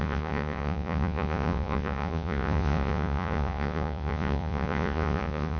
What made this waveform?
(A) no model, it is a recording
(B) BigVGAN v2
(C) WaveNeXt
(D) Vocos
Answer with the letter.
D